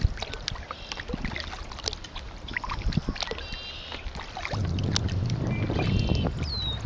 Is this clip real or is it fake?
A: real